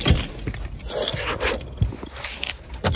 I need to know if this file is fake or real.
fake